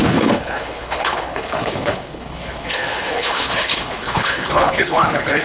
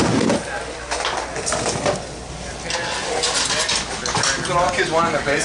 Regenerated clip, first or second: first